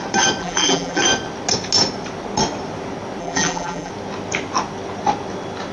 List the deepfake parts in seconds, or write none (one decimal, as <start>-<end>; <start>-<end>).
0.4-1.0; 3.2-3.9